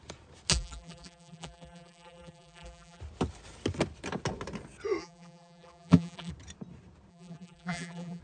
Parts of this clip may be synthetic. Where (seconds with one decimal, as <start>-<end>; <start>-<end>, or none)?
0.5-3.0; 5.0-6.3; 7.1-8.2